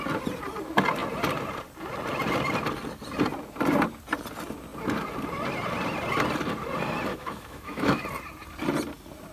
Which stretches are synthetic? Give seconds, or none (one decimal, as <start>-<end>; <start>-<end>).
7.1-8.0